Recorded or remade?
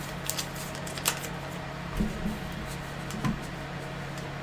recorded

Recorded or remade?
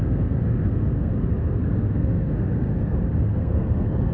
remade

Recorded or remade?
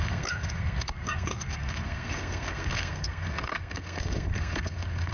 remade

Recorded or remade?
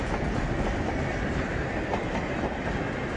recorded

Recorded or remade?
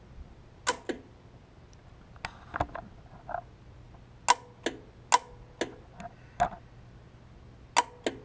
recorded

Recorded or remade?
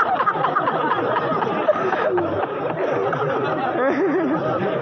recorded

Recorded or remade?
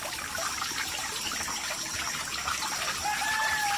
recorded